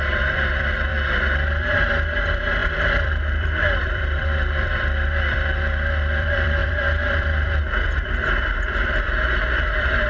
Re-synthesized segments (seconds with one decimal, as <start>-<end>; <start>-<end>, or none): 0.0-10.1